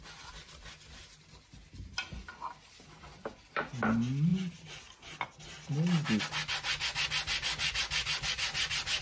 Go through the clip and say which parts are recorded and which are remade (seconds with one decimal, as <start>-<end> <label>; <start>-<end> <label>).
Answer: 0.0-9.0 recorded